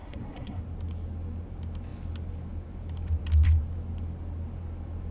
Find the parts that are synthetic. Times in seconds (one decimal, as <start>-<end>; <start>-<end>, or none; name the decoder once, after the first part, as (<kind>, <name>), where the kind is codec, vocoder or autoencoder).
0.0-0.6 (codec, SNAC)